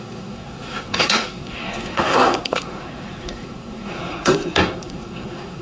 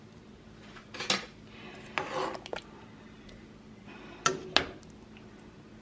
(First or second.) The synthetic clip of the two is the first